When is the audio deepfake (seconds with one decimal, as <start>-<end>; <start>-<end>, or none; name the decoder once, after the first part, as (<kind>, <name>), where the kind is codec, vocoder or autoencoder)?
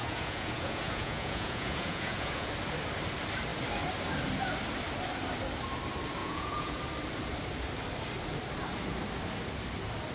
0.0-2.5 (vocoder, Vocos); 6.2-6.8